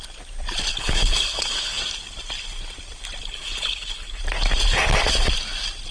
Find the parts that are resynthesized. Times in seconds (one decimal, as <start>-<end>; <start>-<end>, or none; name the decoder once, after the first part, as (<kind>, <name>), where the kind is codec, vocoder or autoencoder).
0.7-1.8 (codec, HILCodec); 3.2-4.2